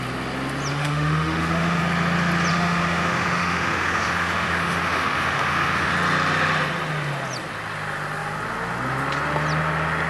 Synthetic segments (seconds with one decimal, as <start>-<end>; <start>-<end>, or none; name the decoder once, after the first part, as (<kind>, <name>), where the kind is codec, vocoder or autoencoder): 0.7-1.8 (autoencoder, DAC-VAE); 2.5-5.9